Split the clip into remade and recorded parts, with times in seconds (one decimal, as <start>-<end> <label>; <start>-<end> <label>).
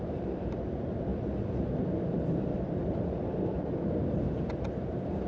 0.0-5.3 recorded